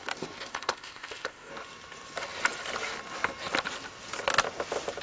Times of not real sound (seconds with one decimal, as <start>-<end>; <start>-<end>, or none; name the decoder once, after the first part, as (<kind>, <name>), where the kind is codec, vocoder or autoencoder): 0.5-1.5 (codec, ZipCodec)